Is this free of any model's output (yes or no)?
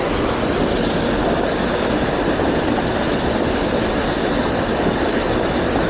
yes